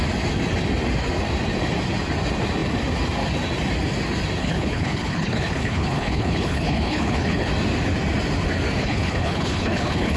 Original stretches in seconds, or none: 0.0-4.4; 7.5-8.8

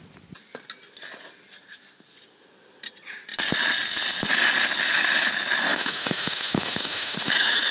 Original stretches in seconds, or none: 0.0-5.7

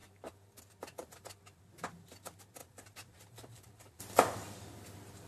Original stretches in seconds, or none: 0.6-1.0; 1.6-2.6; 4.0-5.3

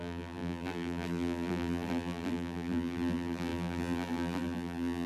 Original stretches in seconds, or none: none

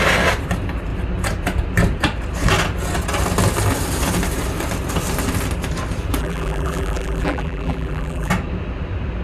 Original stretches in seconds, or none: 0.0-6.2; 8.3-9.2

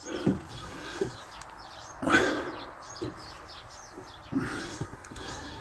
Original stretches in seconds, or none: 0.0-0.5; 1.2-4.6

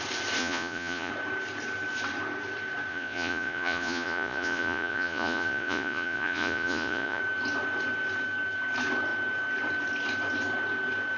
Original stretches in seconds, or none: 0.0-0.4; 1.1-2.9; 7.2-11.2